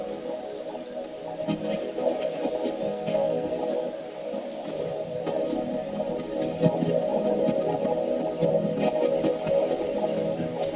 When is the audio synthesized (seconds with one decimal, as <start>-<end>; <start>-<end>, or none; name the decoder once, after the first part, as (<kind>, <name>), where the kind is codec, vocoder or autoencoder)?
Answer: 2.9-3.6 (codec, SNAC)